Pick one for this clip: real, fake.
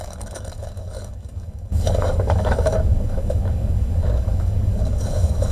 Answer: fake